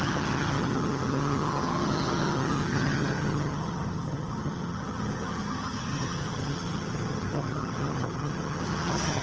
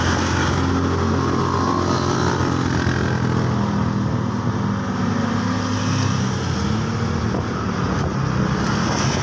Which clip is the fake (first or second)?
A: first